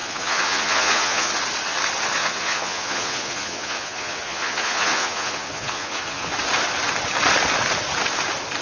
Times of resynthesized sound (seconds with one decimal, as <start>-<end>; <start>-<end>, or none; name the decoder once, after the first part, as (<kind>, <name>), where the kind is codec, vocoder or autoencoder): 0.0-1.3 (vocoder, Vocos); 2.2-6.3